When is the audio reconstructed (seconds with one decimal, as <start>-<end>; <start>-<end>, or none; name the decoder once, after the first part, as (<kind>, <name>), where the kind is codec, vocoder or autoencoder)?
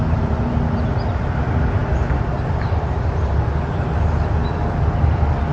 none